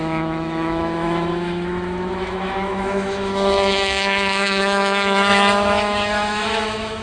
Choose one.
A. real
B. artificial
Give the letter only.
B